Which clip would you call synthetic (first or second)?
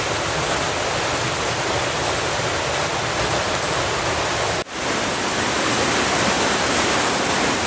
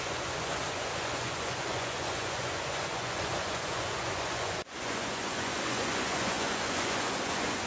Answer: second